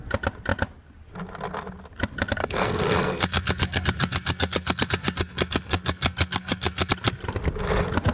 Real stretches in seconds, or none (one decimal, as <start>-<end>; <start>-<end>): 0.0-2.4; 6.9-8.1

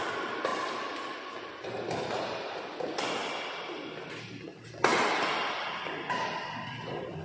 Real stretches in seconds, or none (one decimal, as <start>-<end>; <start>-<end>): 0.0-7.2

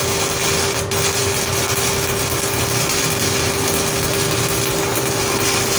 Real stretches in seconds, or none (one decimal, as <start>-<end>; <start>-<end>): 0.0-5.8

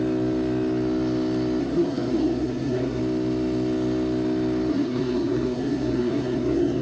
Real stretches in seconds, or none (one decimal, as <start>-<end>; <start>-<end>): 0.0-1.6; 3.0-4.7

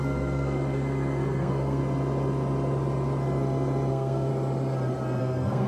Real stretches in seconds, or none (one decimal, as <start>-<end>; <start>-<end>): 1.8-3.9; 4.3-5.2

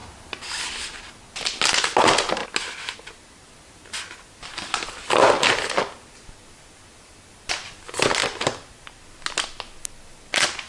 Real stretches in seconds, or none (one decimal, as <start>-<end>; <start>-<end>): 0.0-10.7